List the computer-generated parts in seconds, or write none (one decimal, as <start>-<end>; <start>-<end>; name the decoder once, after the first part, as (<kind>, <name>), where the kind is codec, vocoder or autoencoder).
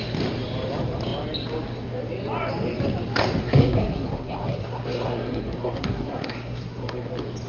3.4-7.1 (codec, SNAC)